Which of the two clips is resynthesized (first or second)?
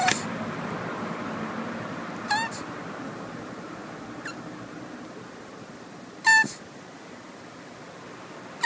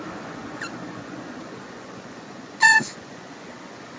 second